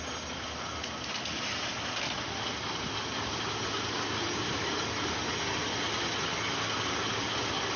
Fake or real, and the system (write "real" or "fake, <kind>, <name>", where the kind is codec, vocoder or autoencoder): real